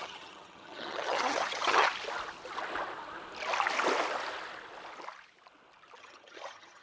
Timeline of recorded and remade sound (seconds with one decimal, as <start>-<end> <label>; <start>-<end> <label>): 0.0-1.9 remade; 1.9-6.0 recorded; 6.0-6.8 remade